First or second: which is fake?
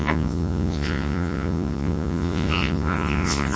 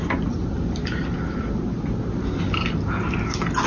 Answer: first